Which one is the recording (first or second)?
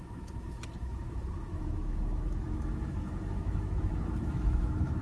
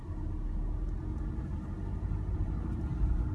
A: second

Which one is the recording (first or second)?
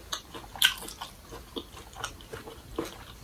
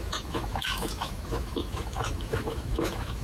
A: first